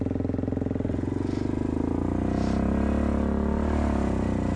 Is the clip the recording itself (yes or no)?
yes